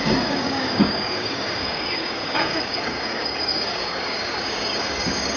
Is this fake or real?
fake